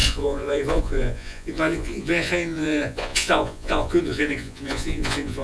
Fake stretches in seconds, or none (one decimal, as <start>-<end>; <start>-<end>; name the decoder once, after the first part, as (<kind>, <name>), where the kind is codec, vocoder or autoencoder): 0.0-5.4 (vocoder, Vocos)